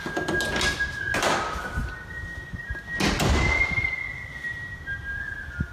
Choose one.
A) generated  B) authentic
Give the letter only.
B